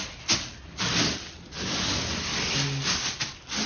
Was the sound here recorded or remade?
recorded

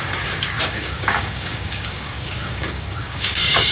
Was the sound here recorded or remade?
remade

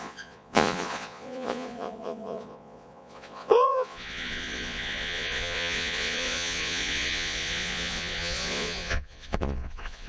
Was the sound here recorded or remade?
remade